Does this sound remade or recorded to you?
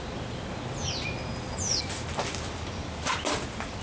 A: recorded